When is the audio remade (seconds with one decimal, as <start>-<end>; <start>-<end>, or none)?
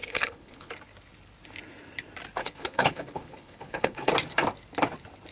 0.0-0.7; 2.4-4.1